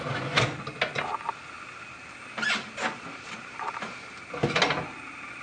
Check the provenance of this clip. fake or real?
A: real